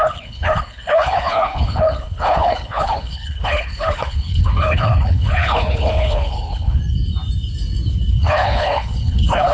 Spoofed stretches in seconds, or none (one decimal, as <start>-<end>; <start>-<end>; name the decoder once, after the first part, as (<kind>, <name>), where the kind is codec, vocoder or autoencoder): 0.0-6.8 (codec, HILCodec); 8.1-9.5